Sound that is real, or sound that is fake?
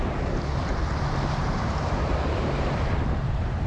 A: fake